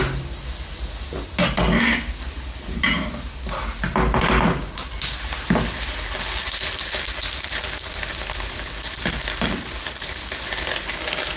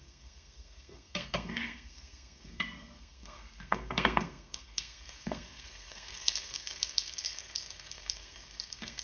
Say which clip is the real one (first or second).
first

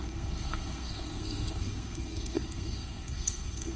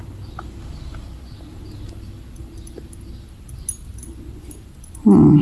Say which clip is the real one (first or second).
second